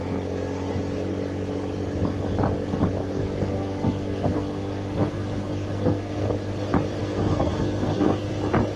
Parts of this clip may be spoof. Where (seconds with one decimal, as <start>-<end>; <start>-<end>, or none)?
3.0-6.3; 7.0-8.3

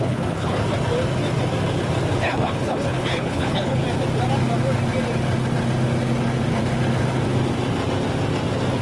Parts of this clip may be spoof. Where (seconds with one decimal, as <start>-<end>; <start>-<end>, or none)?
0.0-0.6; 2.2-3.8

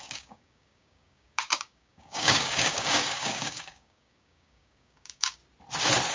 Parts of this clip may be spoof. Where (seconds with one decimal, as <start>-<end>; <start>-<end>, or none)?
0.0-5.4

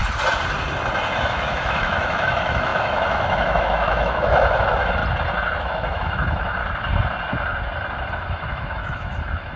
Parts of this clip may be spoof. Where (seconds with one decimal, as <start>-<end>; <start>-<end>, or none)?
1.2-5.0; 5.6-6.6; 8.1-9.6

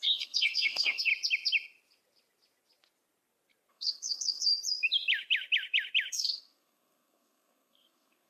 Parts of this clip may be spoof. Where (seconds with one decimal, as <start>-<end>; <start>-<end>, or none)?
0.0-1.1; 3.7-4.5; 6.1-8.3

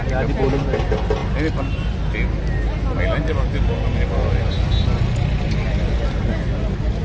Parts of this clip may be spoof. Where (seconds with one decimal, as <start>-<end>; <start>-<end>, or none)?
none

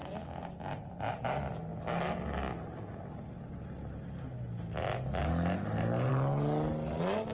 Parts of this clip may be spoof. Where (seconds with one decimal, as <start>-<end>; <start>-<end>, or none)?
none

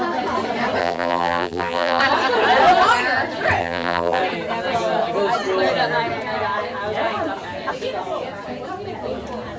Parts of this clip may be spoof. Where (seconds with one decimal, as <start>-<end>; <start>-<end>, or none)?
0.8-2.0; 3.6-4.2